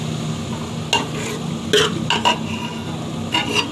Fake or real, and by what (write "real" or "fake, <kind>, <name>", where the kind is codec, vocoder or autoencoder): real